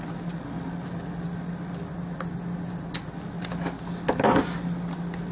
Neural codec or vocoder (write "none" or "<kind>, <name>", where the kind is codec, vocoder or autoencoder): none